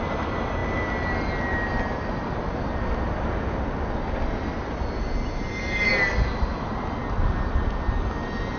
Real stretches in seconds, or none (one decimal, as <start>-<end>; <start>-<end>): 0.0-8.6